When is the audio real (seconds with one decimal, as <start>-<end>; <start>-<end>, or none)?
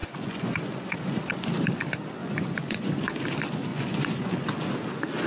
1.2-2.2; 3.2-3.7; 4.5-5.3